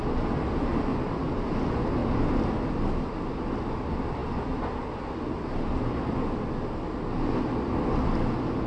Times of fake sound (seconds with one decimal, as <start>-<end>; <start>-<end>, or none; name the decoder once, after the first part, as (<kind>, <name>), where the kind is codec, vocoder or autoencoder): none